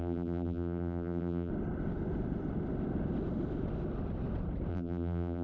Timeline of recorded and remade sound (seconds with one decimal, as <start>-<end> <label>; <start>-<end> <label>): 0.0-1.5 remade; 1.5-4.7 recorded; 4.7-5.4 remade